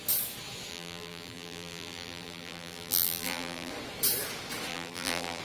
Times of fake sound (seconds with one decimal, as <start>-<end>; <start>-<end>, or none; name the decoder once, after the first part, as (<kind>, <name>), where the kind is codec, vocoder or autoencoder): 0.7-3.7 (vocoder, BigVGAN v2); 4.7-5.4